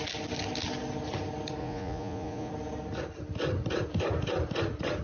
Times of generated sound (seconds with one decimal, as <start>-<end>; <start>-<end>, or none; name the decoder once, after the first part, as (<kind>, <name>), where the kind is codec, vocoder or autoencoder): 1.6-2.5 (vocoder, Vocos)

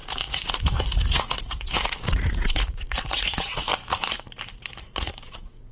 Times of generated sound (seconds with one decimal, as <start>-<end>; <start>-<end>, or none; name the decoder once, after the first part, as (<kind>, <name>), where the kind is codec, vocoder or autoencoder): 0.0-3.7 (vocoder, Vocos); 4.8-5.7

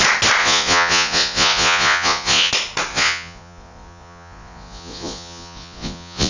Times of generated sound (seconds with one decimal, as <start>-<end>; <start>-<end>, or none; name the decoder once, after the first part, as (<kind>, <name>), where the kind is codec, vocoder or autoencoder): 0.4-2.5 (vocoder, Vocos); 2.9-6.3